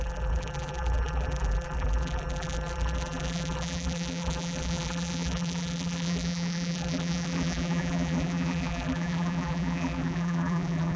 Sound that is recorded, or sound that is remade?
remade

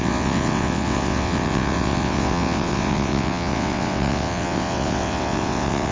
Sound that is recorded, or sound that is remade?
remade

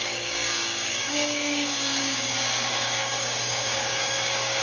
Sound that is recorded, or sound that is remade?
remade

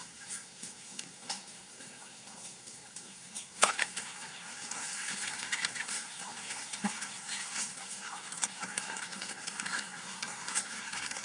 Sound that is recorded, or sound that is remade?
remade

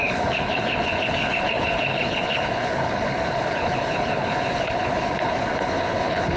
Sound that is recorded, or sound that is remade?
remade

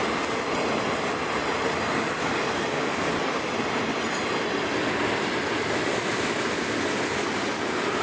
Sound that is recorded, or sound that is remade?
recorded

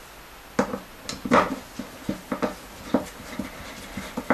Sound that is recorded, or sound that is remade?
recorded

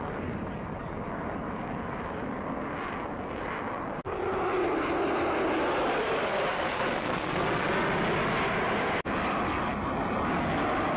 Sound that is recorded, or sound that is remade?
recorded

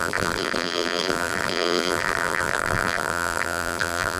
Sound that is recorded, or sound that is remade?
remade